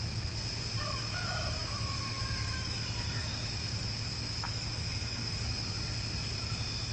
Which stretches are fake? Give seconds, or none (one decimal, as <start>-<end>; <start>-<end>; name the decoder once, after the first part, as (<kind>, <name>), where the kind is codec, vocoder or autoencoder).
1.6-5.7 (autoencoder, DAC-VAE)